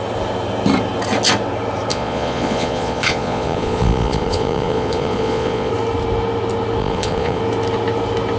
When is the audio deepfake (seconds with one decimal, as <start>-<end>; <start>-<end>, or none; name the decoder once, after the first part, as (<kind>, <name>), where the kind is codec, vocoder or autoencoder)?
1.9-5.7 (vocoder, Vocos); 6.8-7.4